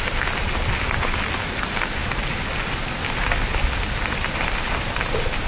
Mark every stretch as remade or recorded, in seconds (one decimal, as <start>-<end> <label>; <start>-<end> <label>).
0.0-5.5 recorded